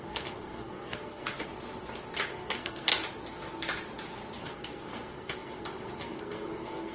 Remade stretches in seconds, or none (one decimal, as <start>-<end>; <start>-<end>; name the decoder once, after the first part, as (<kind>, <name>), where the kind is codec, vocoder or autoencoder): 0.0-1.5 (codec, SNAC); 2.3-2.9; 4.4-6.9